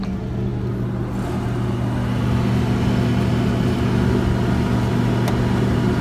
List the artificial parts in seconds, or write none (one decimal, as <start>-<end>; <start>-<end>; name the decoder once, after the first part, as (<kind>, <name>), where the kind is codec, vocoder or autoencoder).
none